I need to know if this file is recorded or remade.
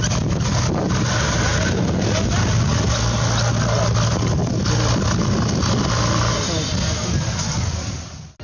recorded